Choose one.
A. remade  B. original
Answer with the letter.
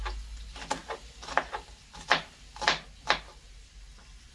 B